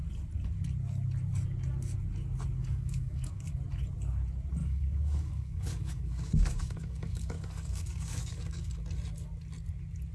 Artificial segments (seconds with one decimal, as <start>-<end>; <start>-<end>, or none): 2.6-3.5; 4.6-8.7